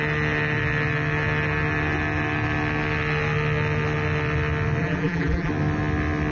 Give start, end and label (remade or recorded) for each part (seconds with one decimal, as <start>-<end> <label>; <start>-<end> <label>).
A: 0.0-4.8 recorded; 4.8-5.5 remade; 5.5-6.3 recorded